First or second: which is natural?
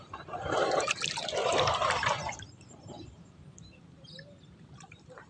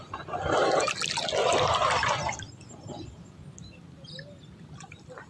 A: second